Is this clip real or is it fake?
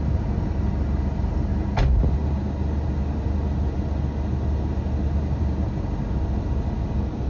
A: real